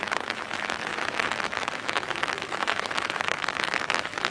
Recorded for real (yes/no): no